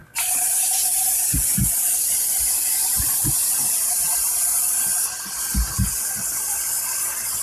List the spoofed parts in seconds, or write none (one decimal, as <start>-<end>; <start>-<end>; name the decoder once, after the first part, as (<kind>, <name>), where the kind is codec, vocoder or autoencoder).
none